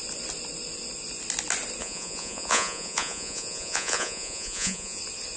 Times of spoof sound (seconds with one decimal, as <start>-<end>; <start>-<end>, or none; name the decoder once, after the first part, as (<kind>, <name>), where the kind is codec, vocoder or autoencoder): 1.8-5.0 (vocoder, Vocos)